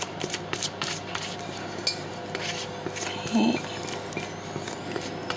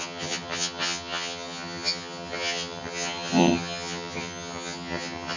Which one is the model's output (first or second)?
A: second